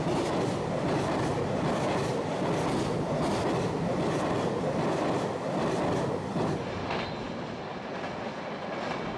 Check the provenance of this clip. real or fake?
real